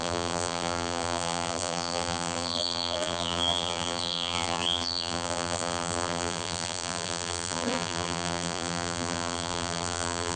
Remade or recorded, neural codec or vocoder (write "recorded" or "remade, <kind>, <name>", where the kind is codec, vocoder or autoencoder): remade, vocoder, BigVGAN v2